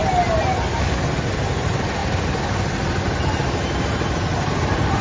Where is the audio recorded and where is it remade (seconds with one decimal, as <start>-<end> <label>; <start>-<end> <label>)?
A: 0.0-5.0 recorded